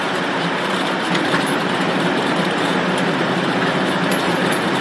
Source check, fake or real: fake